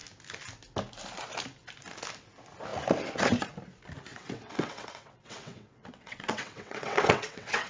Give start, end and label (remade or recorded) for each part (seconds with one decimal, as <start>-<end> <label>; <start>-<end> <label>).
0.0-4.1 recorded; 4.1-7.7 remade